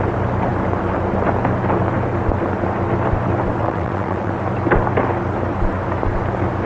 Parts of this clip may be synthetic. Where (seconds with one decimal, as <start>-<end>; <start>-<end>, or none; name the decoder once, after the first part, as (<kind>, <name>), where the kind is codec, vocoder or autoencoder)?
3.6-4.3 (vocoder, WaveNeXt)